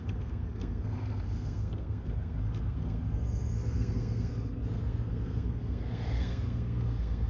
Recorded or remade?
remade